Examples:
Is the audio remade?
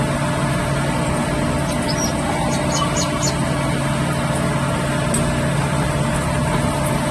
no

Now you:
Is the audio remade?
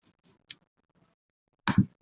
no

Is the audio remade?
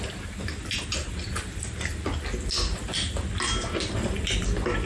no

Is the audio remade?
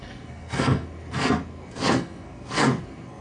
yes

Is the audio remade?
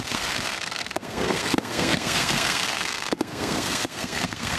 yes